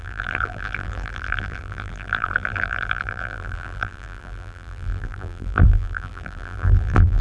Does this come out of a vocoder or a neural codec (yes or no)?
yes